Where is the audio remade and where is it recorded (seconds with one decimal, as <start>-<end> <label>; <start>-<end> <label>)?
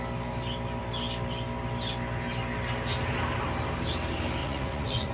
0.0-4.4 recorded; 4.4-5.1 remade